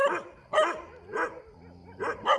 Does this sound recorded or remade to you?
recorded